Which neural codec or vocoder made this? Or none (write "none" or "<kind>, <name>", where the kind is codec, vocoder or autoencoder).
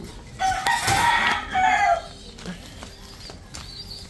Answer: none